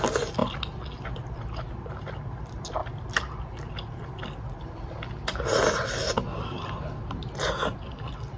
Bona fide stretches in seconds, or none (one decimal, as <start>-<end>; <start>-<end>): 0.0-8.4

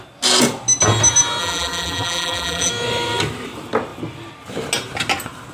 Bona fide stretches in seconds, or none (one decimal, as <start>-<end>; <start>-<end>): 0.0-1.4; 2.7-5.5

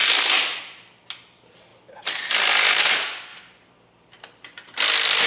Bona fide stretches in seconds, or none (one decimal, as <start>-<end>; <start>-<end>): 0.0-3.3